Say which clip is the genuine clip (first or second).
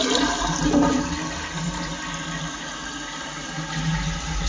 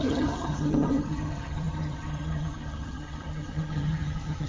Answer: first